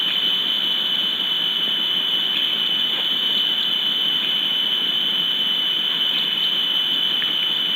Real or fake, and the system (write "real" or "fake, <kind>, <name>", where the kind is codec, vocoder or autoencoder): real